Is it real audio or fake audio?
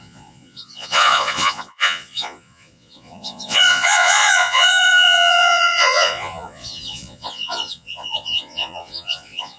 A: fake